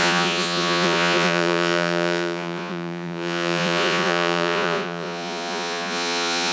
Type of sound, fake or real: fake